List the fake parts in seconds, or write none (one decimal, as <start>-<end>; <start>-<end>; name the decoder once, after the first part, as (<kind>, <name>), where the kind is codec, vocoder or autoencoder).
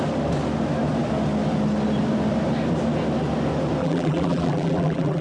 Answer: 3.8-5.2 (vocoder, BigVGAN v2)